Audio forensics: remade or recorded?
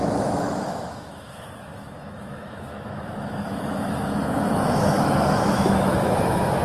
remade